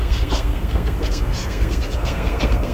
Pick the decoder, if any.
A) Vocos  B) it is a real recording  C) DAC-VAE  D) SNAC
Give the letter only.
D